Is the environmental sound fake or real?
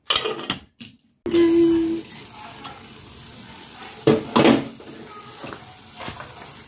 real